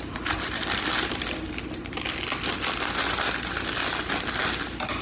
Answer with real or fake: real